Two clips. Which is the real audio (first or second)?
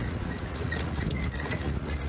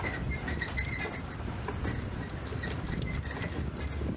second